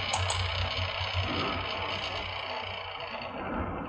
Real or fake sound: real